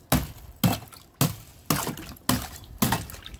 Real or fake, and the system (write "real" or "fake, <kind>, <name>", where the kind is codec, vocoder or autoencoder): real